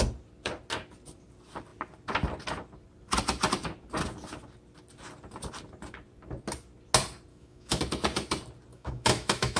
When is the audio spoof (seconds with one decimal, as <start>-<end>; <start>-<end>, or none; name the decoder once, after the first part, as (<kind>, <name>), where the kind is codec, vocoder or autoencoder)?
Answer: 7.3-7.8 (autoencoder, DAC-VAE); 8.7-9.6